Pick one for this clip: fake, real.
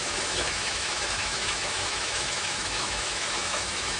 fake